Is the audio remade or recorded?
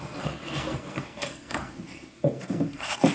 remade